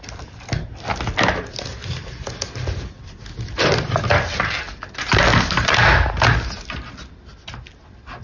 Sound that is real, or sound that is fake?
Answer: real